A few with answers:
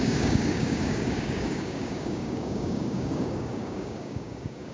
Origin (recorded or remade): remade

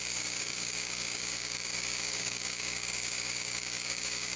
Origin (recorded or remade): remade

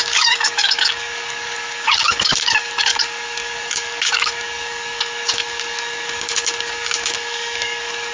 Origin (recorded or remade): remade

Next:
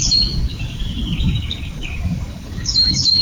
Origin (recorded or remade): remade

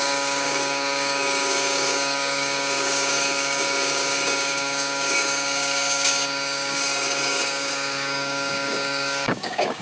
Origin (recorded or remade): remade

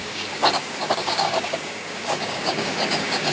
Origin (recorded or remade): remade